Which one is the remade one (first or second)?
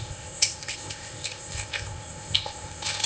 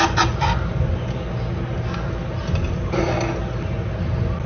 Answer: first